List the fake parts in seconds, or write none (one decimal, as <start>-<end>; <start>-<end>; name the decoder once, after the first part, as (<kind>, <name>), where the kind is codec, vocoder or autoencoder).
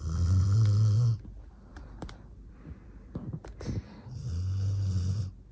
1.7-2.9 (vocoder, BigVGAN v2)